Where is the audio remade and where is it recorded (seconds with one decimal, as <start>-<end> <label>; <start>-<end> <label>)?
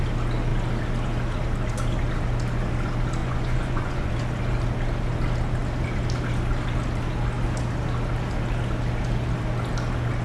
0.0-3.2 recorded; 3.2-4.1 remade; 4.1-10.2 recorded